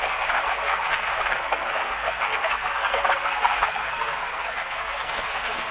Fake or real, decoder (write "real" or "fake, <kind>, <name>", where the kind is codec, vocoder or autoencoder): fake, codec, SNAC